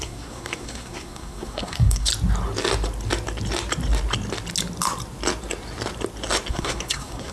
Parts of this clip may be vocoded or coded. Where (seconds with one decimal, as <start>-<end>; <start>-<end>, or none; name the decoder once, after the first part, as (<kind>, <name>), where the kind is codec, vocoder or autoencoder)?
0.0-2.1 (codec, SNAC); 6.5-7.3